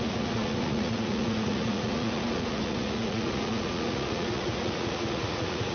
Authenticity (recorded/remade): remade